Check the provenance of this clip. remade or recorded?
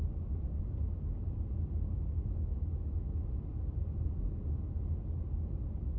recorded